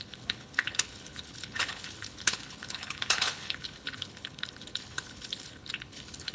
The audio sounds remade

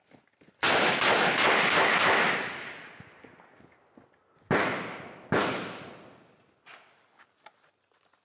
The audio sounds recorded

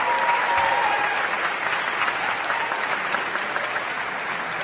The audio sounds recorded